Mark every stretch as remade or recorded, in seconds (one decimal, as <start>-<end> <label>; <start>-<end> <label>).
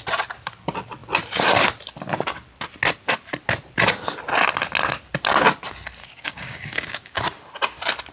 0.0-6.0 recorded; 6.0-7.2 remade; 7.2-8.1 recorded